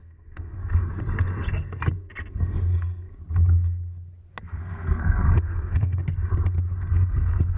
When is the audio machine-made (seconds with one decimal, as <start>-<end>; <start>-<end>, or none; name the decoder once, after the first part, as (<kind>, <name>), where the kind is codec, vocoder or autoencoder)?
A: 0.0-0.6 (codec, SNAC); 2.3-3.1; 4.4-6.0; 6.9-7.6